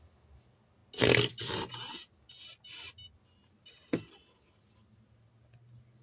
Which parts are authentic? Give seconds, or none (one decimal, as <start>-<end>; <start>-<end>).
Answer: 0.0-6.0